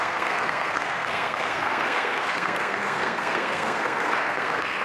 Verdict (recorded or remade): remade